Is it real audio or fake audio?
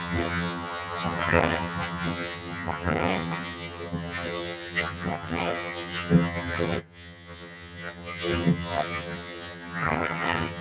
fake